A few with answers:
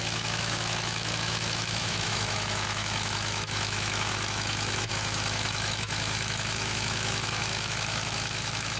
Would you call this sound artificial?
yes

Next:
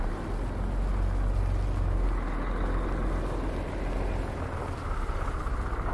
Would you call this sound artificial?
no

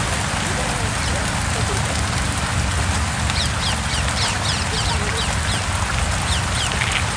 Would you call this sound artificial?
no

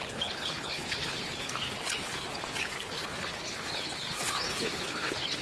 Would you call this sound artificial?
yes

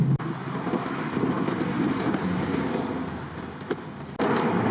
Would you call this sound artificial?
no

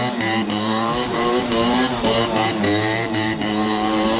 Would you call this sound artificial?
yes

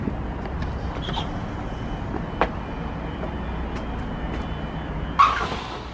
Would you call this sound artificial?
no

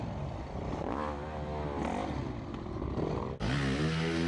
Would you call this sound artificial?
no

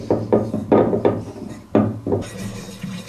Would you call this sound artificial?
no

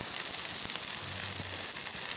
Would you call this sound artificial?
no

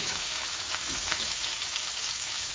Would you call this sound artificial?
yes